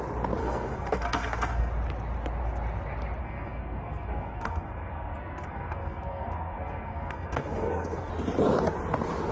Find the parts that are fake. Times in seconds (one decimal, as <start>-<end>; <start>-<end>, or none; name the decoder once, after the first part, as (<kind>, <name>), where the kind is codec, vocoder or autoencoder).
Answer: 0.4-1.7 (codec, SNAC); 3.2-8.1